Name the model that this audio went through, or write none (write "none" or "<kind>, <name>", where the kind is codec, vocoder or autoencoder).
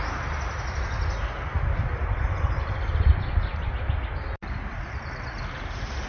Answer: none